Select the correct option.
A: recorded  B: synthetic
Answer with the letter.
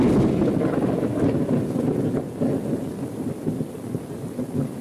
A